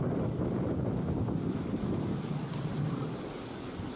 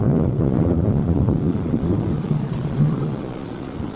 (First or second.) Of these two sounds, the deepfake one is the second